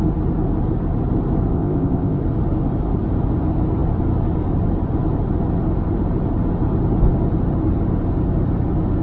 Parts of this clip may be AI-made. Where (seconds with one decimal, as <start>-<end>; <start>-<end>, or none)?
1.5-2.2